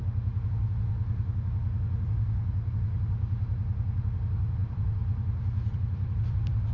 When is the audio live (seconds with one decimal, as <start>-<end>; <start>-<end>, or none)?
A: 0.0-4.0